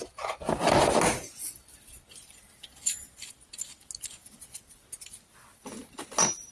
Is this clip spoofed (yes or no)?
no